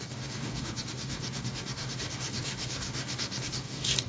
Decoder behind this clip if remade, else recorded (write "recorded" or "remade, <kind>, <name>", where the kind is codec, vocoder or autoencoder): remade, codec, DAC